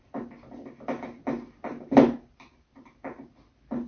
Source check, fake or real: real